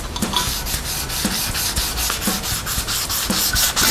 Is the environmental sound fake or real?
real